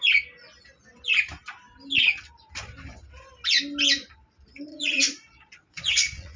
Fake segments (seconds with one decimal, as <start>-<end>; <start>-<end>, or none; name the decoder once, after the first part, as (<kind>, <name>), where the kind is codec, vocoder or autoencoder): 4.7-6.4 (vocoder, Vocos)